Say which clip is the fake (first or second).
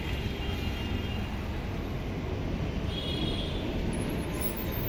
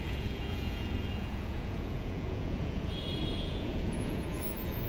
second